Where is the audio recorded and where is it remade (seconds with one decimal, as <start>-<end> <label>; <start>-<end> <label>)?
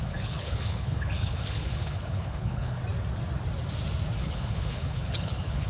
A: 0.0-2.8 remade; 2.8-4.2 recorded; 4.2-5.7 remade